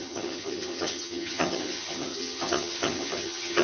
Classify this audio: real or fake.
fake